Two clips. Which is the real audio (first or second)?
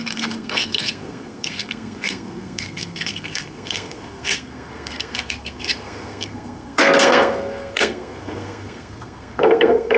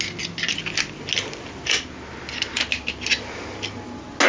second